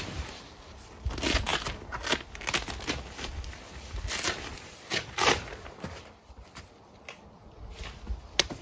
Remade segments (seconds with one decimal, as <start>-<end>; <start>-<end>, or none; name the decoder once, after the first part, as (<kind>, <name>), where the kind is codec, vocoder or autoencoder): none